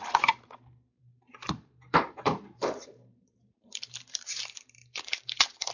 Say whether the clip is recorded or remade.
remade